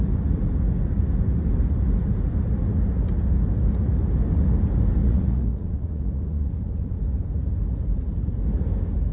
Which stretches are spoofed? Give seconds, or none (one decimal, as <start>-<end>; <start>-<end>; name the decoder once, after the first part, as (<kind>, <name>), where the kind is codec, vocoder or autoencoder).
5.0-7.0 (vocoder, Vocos)